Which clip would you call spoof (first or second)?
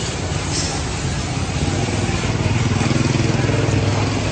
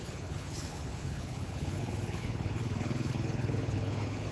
second